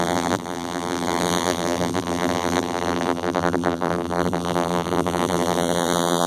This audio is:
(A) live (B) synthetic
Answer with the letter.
B